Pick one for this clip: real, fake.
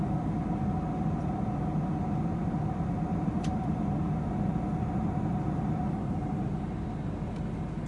real